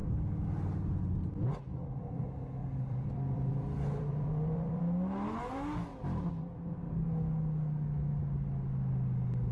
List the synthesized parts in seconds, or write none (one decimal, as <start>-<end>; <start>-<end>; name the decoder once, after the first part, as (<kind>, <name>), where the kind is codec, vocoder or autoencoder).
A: 2.6-4.8 (vocoder, BigVGAN v2)

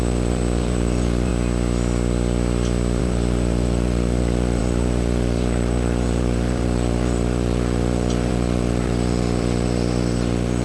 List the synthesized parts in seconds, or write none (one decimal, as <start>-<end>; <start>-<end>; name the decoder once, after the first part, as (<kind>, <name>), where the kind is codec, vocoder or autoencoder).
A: 0.0-1.3 (vocoder, BigVGAN v2); 3.0-10.6

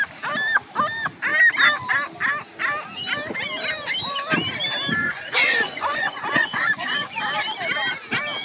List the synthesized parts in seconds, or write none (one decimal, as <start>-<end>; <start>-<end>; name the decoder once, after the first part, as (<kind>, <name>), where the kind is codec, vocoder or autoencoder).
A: 5.0-7.2 (vocoder, Vocos)

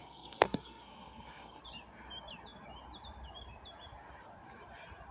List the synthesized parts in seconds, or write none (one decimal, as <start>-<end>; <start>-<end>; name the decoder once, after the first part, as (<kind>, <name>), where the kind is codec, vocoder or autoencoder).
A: 0.0-1.6 (codec, SNAC)

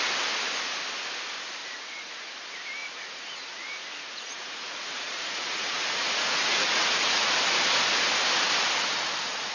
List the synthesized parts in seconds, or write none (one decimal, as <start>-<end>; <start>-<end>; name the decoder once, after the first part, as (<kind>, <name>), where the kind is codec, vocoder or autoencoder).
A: 1.6-2.1 (vocoder, Vocos); 2.8-7.3

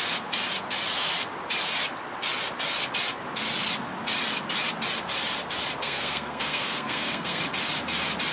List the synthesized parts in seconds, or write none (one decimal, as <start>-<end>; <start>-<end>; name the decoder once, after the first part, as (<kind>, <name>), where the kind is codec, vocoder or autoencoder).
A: 5.8-7.4 (codec, SNAC)